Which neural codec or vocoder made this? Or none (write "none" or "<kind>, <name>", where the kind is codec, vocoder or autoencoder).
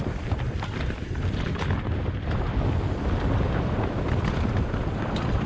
none